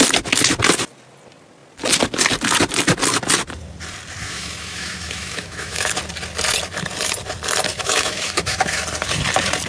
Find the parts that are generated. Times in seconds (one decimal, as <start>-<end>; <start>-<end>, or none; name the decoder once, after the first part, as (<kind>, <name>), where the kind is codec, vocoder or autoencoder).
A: 4.2-5.9 (autoencoder, DAC-VAE); 7.7-8.8